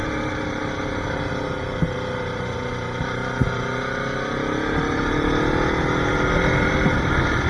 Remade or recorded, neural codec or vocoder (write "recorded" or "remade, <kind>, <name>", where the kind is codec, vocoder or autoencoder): recorded